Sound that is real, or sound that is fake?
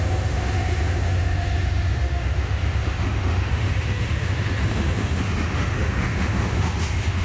fake